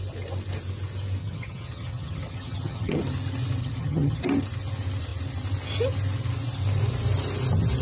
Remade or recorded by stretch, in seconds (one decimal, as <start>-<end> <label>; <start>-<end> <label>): 0.0-1.2 recorded; 1.2-3.0 remade; 3.0-3.6 recorded; 3.6-4.2 remade; 4.2-7.8 recorded